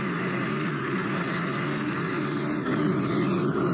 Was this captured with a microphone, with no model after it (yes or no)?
yes